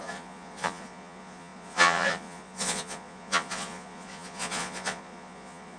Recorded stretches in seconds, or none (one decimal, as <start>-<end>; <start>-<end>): none